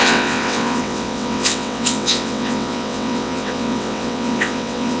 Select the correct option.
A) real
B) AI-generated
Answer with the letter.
B